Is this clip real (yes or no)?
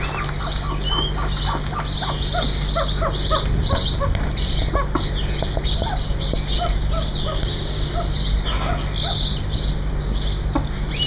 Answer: yes